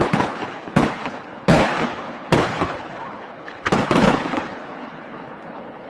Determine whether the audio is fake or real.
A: fake